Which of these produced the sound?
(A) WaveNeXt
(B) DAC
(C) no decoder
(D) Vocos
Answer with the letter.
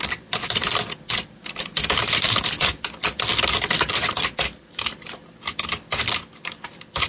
C